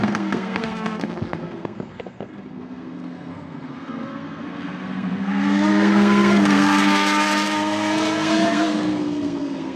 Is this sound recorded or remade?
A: remade